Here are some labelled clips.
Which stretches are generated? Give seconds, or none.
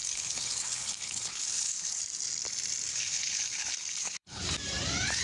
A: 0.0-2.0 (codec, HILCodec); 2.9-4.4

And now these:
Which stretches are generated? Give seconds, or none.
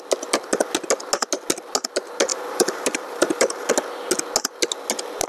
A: 2.3-3.7 (vocoder, BigVGAN v2)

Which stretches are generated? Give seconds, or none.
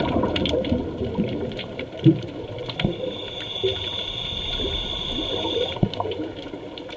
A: 0.0-2.6 (vocoder, BigVGAN v2); 4.3-7.0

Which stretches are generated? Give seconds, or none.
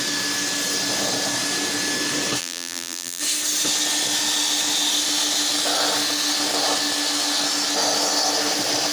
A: 2.4-3.2 (vocoder, BigVGAN v2)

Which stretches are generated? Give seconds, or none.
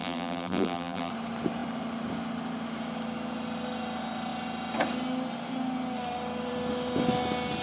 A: 0.0-1.1 (vocoder, BigVGAN v2)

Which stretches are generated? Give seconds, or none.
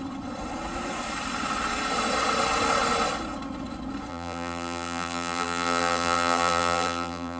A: 4.1-7.4 (vocoder, BigVGAN v2)